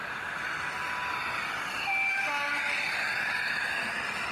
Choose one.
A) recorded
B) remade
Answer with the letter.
A